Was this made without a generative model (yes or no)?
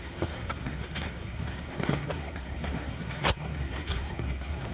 no